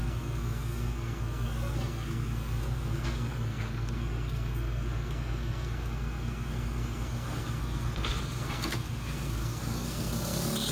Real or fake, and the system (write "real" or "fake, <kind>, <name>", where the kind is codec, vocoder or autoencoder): fake, codec, SNAC